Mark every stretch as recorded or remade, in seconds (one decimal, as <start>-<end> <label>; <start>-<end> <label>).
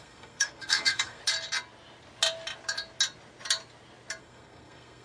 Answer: 0.0-1.2 remade; 1.2-4.2 recorded; 4.2-5.0 remade